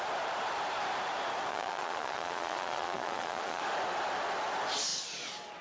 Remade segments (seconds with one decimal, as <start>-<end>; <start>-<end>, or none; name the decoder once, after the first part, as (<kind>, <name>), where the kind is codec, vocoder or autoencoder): 1.5-3.6 (vocoder, Vocos)